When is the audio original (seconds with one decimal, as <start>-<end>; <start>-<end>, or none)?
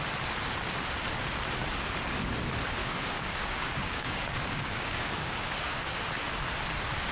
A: 0.0-2.8; 6.0-7.1